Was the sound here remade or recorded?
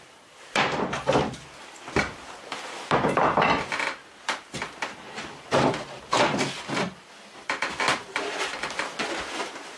remade